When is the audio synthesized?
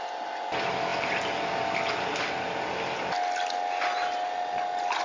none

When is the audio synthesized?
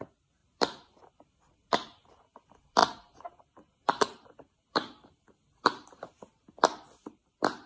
0.0-2.8 (vocoder, BigVGAN v2); 4.5-7.7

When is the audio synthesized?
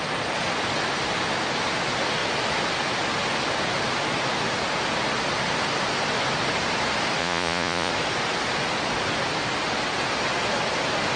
7.2-7.9 (vocoder, Vocos)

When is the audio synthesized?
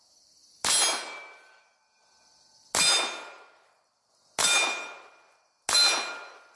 none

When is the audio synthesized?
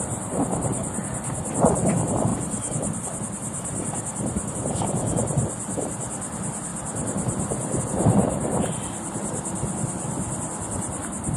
none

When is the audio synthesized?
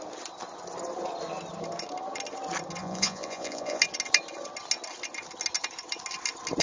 2.8-3.8 (vocoder, Vocos)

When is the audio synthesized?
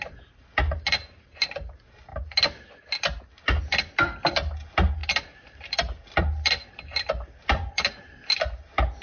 none